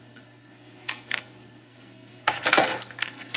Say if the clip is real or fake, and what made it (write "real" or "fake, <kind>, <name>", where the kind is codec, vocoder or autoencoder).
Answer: fake, codec, SNAC